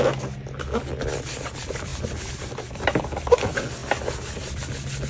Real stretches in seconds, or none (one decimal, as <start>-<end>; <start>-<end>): 0.0-5.1